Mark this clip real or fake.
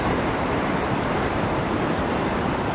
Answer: fake